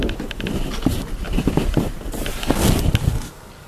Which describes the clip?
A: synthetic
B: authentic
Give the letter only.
B